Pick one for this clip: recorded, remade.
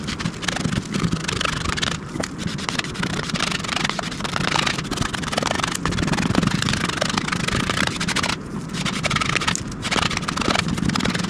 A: remade